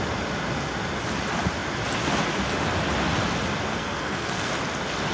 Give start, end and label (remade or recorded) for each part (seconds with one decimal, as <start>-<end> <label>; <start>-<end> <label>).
0.0-3.7 recorded; 3.7-4.5 remade; 4.5-5.1 recorded